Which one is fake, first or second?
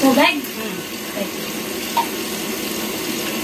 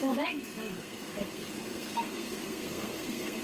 second